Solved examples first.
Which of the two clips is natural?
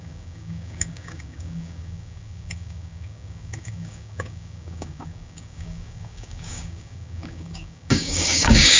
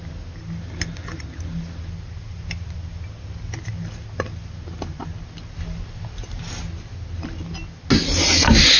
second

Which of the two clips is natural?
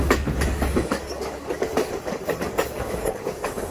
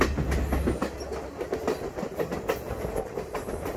second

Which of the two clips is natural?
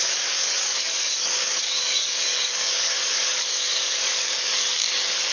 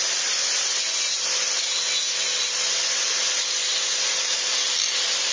second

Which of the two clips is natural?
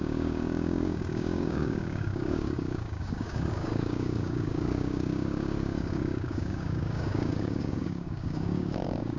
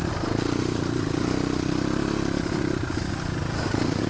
second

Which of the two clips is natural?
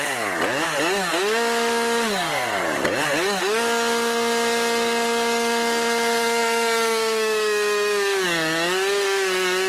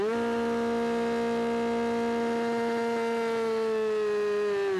second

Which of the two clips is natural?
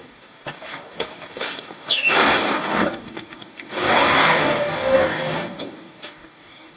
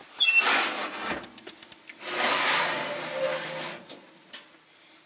second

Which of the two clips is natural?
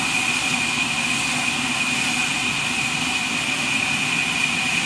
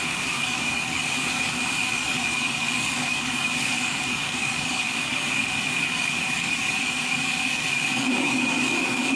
first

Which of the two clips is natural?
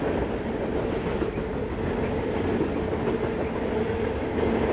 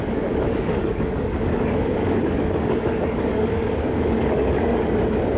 first